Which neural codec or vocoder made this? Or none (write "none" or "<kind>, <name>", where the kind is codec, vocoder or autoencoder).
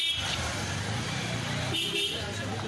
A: vocoder, BigVGAN v2